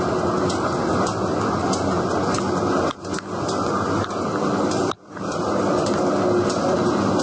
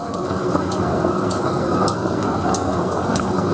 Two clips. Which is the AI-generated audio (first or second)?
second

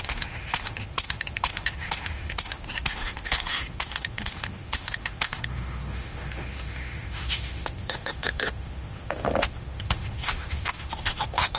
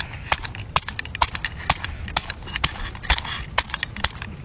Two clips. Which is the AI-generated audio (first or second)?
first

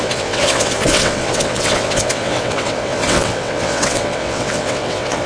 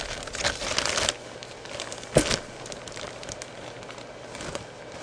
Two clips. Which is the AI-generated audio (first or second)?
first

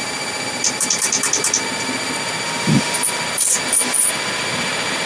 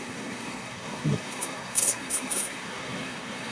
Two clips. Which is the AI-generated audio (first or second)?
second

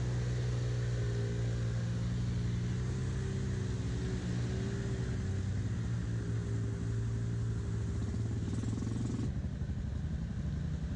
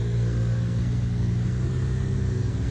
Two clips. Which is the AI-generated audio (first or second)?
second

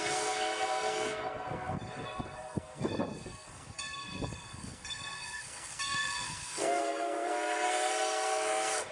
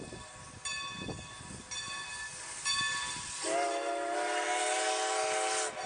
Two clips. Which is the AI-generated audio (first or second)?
first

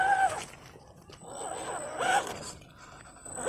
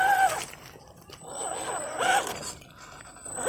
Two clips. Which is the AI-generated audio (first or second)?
second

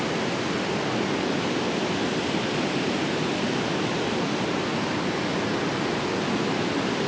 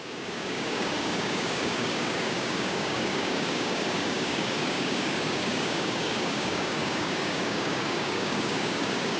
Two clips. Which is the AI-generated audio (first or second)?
second